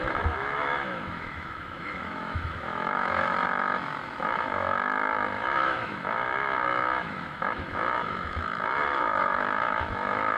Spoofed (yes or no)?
yes